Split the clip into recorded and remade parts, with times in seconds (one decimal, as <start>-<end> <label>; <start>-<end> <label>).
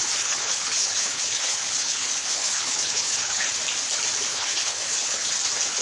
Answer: 0.0-3.5 remade; 3.5-4.3 recorded; 4.3-5.3 remade; 5.3-5.8 recorded